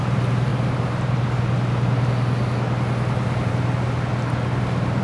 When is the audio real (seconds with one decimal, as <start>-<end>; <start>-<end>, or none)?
0.0-5.0